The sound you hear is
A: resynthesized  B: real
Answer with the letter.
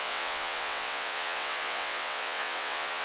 A